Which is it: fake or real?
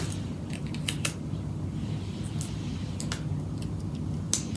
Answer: real